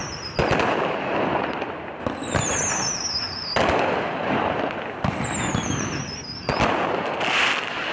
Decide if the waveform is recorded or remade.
recorded